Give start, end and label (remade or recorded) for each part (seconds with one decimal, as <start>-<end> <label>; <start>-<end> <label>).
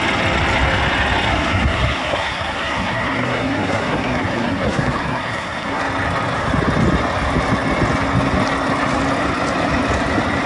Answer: 0.0-1.3 recorded; 1.3-5.8 remade; 5.8-10.5 recorded